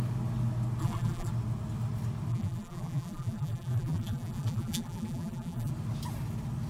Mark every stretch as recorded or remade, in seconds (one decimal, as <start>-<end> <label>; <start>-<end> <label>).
0.0-0.8 recorded; 0.8-1.3 remade; 1.3-2.3 recorded; 2.3-5.7 remade; 5.7-6.7 recorded